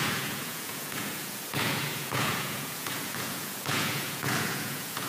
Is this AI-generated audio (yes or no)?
yes